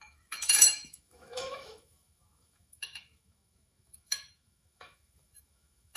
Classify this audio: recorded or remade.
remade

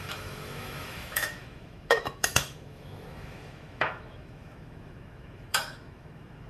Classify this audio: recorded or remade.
remade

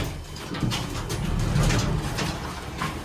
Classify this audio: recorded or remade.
recorded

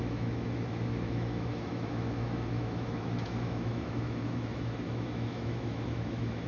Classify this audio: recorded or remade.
remade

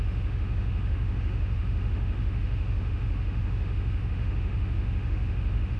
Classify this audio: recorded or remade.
remade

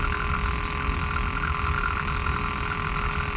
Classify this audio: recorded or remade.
recorded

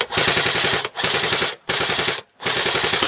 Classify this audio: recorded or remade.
recorded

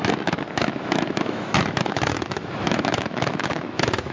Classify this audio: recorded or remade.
remade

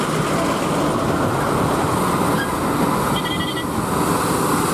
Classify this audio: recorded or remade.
recorded